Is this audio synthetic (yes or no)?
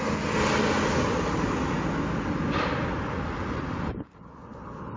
no